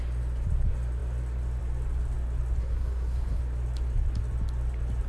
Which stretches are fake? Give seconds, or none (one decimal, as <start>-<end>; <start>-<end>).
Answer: 2.6-3.4